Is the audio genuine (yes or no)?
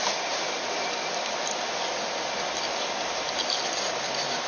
yes